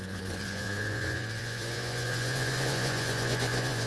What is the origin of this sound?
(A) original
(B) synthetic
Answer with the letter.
B